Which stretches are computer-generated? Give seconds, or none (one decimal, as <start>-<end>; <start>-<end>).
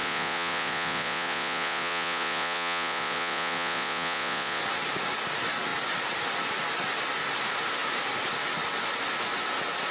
0.0-4.6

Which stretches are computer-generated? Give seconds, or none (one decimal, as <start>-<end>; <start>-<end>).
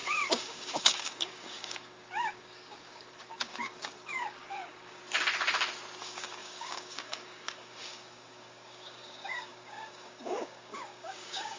0.0-5.0; 6.0-11.6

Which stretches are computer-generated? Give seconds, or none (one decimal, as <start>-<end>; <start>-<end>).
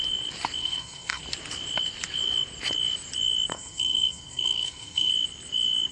0.6-1.2; 3.5-5.1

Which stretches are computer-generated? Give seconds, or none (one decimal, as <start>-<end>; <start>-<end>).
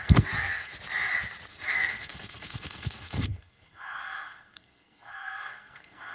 0.0-0.7; 1.5-6.1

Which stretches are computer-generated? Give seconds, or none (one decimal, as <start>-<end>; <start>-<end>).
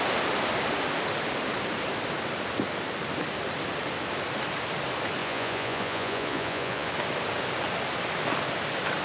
5.2-6.9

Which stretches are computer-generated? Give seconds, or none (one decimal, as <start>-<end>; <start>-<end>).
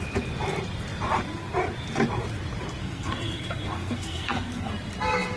2.8-4.7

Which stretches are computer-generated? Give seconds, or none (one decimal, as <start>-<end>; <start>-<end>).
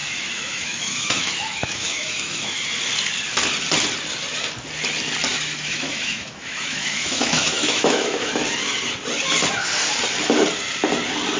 0.0-2.6; 5.3-8.3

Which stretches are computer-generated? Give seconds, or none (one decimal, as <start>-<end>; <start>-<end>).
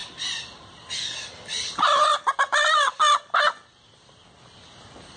none